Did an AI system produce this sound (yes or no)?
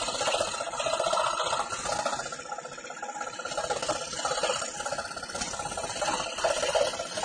no